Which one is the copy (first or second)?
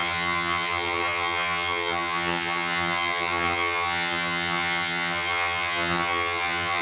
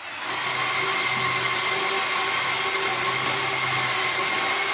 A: first